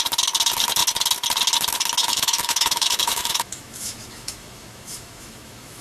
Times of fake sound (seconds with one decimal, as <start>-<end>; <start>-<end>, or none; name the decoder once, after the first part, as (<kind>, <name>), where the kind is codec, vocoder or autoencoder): 2.0-5.8 (autoencoder, DAC-VAE)